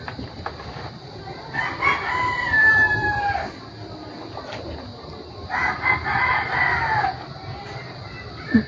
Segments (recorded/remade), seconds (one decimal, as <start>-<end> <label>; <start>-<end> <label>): 0.0-2.6 recorded; 2.6-3.6 remade; 3.6-8.7 recorded